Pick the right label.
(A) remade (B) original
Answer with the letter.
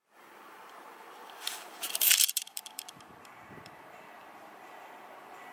A